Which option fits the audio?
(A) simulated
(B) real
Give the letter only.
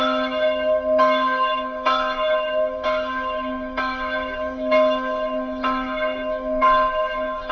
A